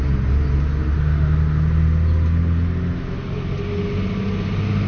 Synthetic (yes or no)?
no